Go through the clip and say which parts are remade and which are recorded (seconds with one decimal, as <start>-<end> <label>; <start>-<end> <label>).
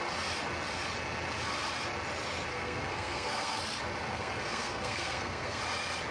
0.0-2.5 recorded; 2.5-3.6 remade; 3.6-4.1 recorded; 4.1-5.6 remade; 5.6-6.1 recorded